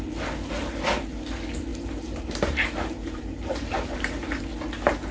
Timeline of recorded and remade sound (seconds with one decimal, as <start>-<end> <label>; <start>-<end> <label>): 0.0-1.7 recorded; 1.7-4.4 remade; 4.4-5.1 recorded